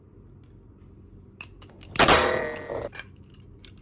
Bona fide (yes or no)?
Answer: yes